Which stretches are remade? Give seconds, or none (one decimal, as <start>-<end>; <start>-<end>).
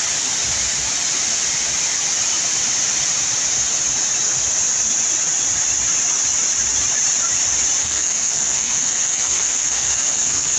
7.8-10.6